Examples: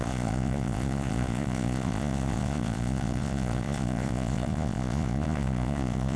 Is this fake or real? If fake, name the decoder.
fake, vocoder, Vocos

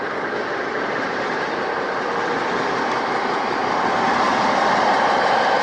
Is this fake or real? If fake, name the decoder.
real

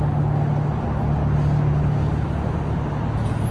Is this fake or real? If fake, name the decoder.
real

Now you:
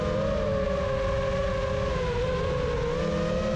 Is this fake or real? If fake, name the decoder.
real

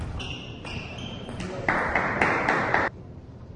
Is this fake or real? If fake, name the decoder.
fake, vocoder, BigVGAN v2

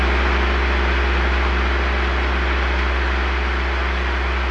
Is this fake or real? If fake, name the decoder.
real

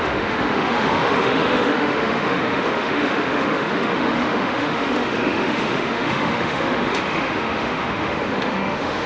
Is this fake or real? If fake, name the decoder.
fake, autoencoder, DAC-VAE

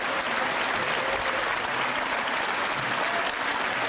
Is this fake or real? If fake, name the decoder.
real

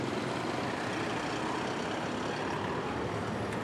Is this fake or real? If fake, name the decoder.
real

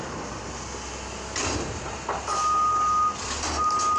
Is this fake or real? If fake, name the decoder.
real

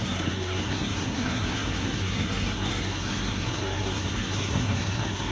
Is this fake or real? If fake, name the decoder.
fake, codec, SNAC